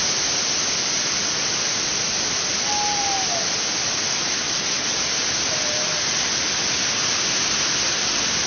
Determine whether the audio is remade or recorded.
recorded